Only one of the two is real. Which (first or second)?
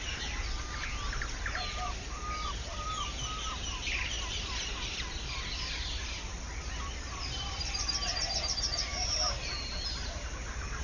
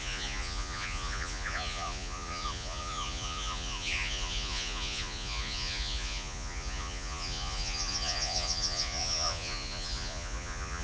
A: first